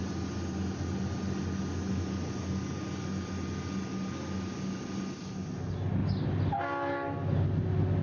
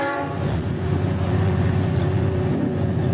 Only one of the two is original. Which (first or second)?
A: first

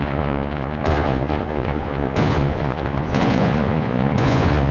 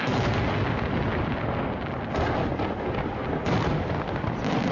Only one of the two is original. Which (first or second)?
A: second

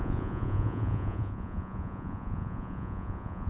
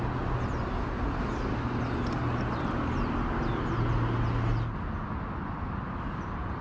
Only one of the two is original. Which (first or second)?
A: second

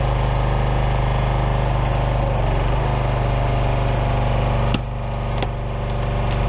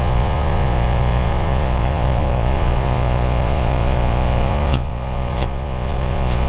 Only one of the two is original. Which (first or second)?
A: first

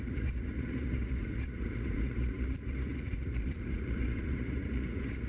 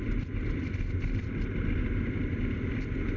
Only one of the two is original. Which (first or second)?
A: second